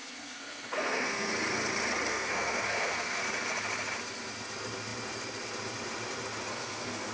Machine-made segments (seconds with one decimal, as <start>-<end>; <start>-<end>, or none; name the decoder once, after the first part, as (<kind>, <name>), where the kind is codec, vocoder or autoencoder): 0.0-1.3 (codec, SNAC); 2.1-3.2; 6.5-7.1